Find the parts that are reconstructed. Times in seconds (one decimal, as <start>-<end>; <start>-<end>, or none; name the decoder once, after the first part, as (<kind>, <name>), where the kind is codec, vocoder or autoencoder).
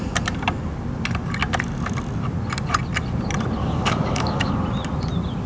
3.6-4.5 (codec, DAC)